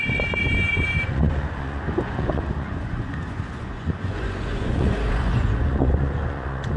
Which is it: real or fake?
fake